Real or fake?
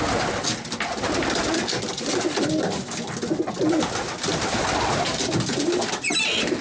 real